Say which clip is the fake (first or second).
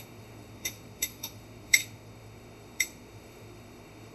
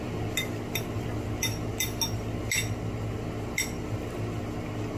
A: first